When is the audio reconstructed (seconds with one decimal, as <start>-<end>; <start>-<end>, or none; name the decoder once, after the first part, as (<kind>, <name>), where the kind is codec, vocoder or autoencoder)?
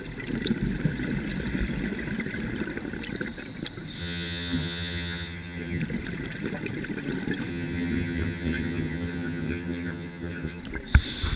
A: 4.0-5.8 (vocoder, HiFi-GAN); 7.5-10.6